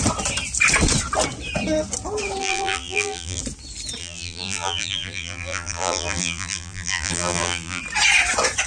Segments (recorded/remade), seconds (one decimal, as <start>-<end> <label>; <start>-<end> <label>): 0.0-2.4 recorded; 2.4-3.4 remade; 3.4-4.0 recorded; 4.0-7.8 remade; 7.8-8.7 recorded